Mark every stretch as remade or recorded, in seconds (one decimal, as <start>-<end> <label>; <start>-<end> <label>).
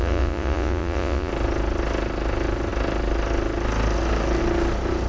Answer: 0.0-1.3 remade; 1.3-5.1 recorded